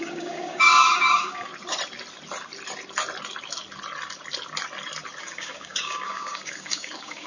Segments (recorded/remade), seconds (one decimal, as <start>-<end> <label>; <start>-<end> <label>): 0.0-1.5 remade; 1.5-5.2 recorded; 5.2-7.3 remade